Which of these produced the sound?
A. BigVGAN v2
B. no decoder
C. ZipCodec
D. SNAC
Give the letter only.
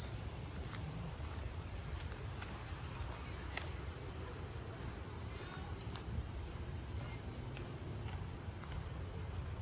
A